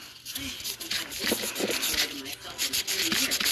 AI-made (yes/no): no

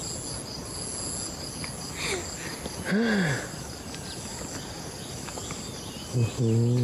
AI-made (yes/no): no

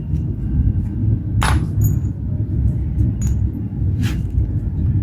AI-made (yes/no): no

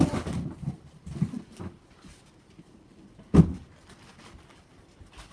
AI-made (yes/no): no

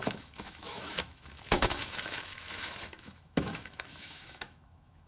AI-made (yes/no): yes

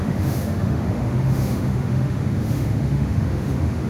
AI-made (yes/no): yes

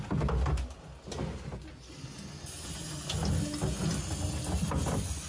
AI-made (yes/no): no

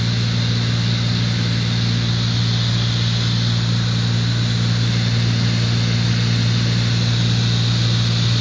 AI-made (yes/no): no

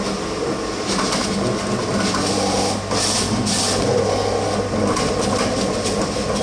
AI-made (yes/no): no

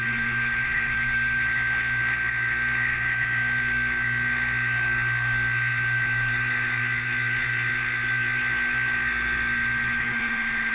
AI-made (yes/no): yes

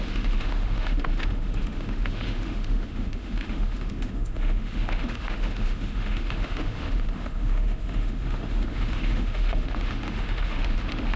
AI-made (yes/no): yes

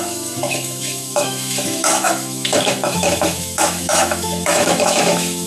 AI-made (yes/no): yes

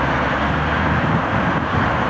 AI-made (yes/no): no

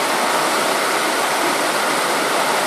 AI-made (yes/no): no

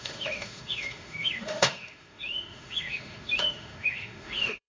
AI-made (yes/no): yes